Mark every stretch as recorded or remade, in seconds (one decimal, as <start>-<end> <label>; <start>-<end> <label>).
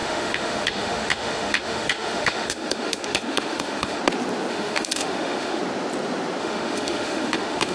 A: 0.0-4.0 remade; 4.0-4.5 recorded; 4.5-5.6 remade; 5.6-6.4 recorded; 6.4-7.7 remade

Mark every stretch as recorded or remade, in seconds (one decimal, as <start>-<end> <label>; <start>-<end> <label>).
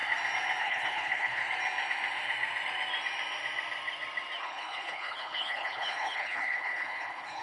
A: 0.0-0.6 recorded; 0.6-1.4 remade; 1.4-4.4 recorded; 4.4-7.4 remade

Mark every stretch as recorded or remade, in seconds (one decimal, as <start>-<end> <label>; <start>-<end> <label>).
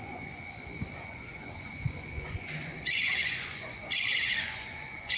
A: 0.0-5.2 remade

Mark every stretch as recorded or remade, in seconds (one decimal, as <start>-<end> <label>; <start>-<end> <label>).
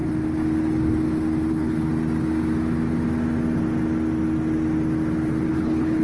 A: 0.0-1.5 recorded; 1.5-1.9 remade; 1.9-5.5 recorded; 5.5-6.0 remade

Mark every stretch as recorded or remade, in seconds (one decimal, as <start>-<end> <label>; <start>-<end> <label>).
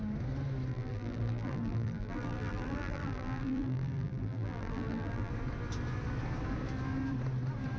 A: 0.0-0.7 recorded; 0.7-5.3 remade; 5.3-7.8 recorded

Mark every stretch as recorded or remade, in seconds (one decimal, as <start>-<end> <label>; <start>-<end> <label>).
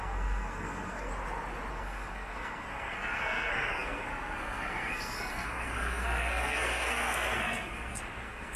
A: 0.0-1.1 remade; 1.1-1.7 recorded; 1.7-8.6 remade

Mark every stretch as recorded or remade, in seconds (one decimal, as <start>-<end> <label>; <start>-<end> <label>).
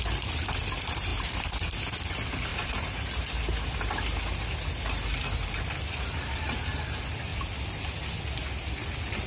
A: 0.0-9.3 recorded